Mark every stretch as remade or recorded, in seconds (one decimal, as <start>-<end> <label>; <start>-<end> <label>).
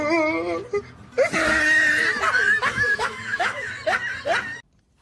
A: 0.0-2.7 recorded; 2.7-3.7 remade; 3.7-5.0 recorded